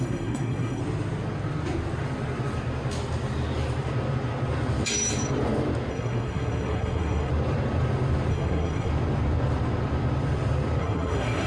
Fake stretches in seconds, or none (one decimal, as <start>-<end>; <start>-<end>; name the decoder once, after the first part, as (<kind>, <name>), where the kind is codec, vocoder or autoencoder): 0.0-0.8 (codec, SNAC); 5.9-7.3; 8.3-8.9; 10.8-11.5